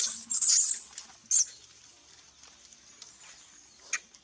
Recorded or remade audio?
recorded